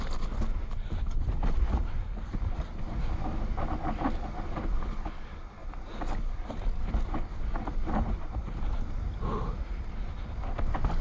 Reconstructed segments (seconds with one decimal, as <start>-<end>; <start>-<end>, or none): none